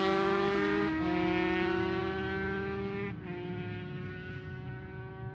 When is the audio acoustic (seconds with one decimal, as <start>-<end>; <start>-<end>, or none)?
0.0-5.3

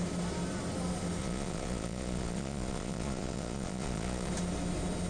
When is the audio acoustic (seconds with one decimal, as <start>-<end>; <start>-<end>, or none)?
0.0-1.2; 4.3-5.1

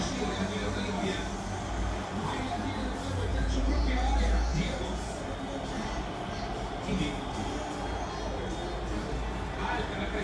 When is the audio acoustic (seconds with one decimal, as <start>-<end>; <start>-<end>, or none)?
0.0-3.3; 3.8-4.5; 5.2-10.2